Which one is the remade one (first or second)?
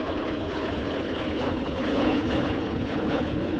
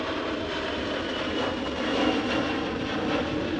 first